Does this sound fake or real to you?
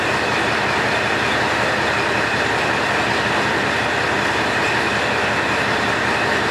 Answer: real